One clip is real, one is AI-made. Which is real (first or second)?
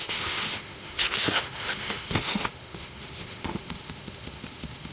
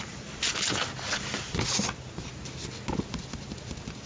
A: second